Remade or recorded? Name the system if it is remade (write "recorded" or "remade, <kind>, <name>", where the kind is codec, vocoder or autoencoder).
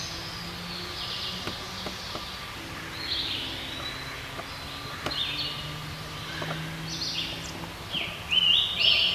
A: recorded